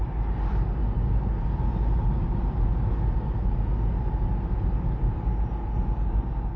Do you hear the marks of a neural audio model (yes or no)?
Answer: no